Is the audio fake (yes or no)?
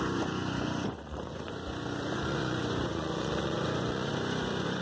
yes